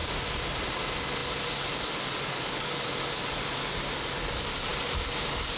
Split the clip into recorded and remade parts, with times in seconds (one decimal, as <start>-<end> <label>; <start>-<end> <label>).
0.0-5.6 recorded